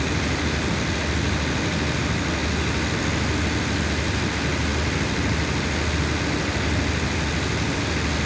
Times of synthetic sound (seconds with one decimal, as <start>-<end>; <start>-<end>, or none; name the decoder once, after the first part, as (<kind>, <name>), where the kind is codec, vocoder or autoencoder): none